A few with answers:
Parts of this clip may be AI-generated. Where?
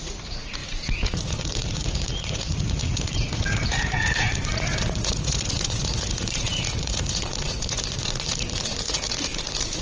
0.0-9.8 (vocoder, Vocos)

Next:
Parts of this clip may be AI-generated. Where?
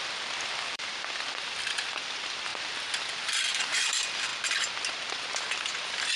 0.0-2.5 (vocoder, BigVGAN v2); 3.6-4.3; 4.9-6.2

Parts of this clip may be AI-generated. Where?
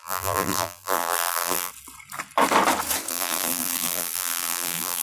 0.0-1.7 (vocoder, BigVGAN v2); 3.1-5.0